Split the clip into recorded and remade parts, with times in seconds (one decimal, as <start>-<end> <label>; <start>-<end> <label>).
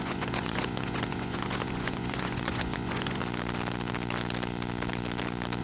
0.0-3.2 remade; 3.2-5.6 recorded